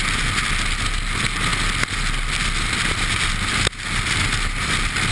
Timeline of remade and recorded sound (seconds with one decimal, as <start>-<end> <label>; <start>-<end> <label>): 0.0-5.1 recorded